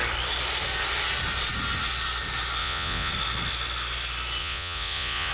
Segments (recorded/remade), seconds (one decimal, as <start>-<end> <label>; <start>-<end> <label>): 0.0-2.6 recorded; 2.6-3.1 remade; 3.1-4.4 recorded; 4.4-5.3 remade